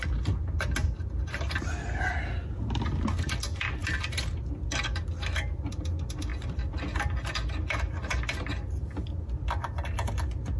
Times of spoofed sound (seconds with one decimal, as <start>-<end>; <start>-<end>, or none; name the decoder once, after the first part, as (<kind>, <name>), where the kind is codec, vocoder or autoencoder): none